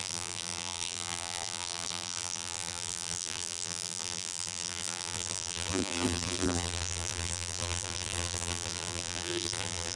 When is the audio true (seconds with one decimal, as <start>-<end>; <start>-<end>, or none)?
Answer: none